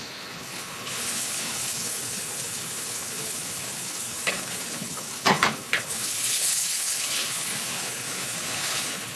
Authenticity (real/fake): fake